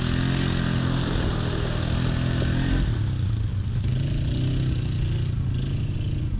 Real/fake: real